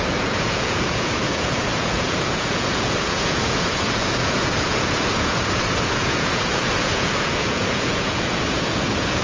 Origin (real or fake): fake